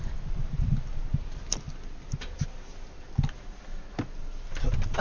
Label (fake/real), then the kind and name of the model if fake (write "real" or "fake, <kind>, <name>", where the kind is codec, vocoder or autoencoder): real